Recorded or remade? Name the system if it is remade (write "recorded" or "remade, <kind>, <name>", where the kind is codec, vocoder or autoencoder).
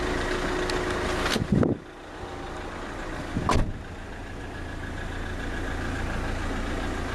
recorded